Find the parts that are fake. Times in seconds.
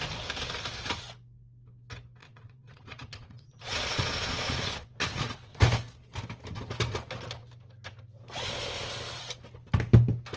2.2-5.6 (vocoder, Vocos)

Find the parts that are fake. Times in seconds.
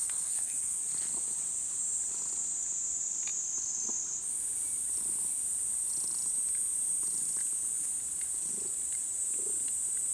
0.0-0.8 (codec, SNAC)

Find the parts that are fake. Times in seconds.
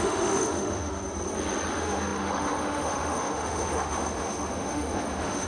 0.0-0.9 (autoencoder, DAC-VAE); 1.7-5.5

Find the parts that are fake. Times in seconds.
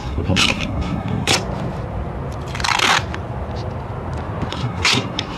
0.0-1.3 (codec, SNAC); 4.5-5.4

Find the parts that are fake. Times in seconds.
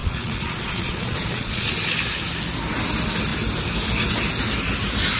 0.0-1.7 (vocoder, Vocos)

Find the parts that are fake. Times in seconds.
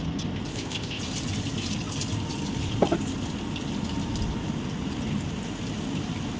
0.5-1.0 (codec, ZipCodec)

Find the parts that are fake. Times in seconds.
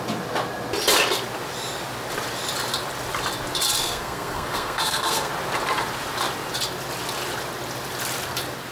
3.8-5.3 (codec, SNAC)